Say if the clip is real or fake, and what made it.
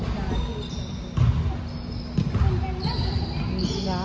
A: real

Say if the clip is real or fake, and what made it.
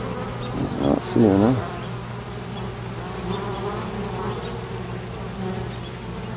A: real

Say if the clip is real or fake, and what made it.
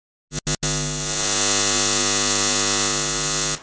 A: real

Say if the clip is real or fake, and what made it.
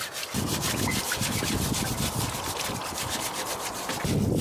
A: real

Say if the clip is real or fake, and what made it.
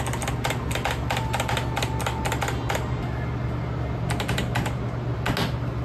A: real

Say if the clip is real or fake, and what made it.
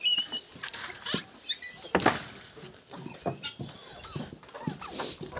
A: real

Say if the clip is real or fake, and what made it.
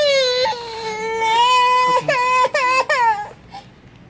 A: real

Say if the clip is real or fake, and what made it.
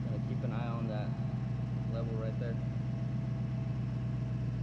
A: real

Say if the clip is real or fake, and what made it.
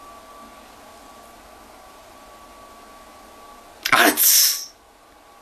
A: real